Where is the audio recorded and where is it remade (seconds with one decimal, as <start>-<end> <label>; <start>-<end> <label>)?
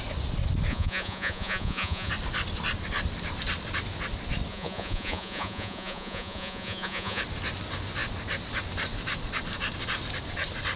0.0-0.7 recorded; 0.7-2.1 remade; 2.1-4.5 recorded; 4.5-7.2 remade; 7.2-10.8 recorded